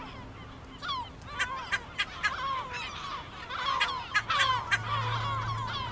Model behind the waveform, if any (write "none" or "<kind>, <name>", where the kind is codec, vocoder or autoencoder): none